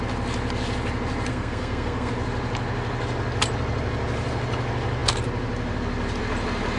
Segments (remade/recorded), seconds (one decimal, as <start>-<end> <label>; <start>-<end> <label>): 0.0-1.3 recorded; 1.3-2.1 remade; 2.1-6.8 recorded